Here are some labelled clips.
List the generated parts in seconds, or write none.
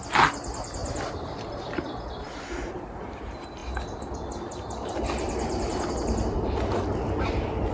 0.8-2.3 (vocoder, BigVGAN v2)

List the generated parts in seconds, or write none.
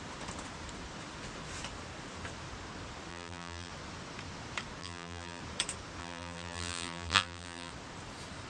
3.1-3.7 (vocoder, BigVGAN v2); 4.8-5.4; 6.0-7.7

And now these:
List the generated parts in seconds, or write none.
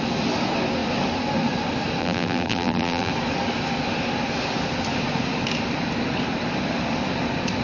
2.0-3.1 (vocoder, BigVGAN v2)